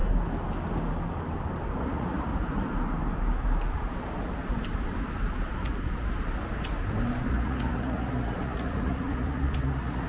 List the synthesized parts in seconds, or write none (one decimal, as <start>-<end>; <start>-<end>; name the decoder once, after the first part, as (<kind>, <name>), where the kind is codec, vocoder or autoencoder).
1.8-2.3 (vocoder, Vocos); 7.3-10.1